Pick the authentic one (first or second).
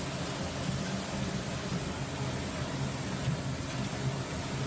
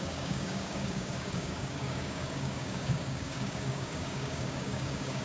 first